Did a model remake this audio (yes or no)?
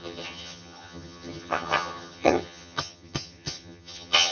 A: yes